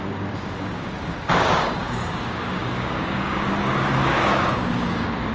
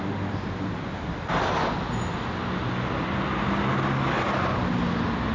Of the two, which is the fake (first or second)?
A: first